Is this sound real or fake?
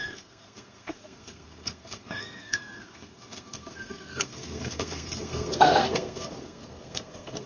fake